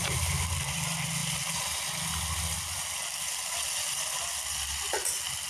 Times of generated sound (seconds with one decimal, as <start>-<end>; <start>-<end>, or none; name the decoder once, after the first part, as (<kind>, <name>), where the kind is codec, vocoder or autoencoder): none